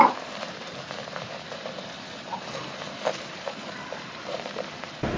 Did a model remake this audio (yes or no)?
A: yes